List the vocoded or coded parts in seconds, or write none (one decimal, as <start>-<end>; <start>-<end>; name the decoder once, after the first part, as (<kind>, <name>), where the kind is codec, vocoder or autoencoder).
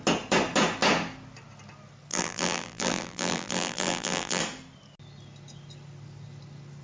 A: 2.1-4.4 (vocoder, BigVGAN v2)